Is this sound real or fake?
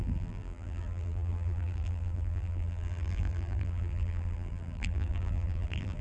fake